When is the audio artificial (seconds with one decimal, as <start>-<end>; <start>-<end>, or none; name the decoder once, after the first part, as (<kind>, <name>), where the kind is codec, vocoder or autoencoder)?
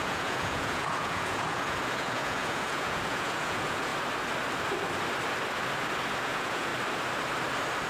0.0-3.9 (vocoder, Vocos); 6.2-6.7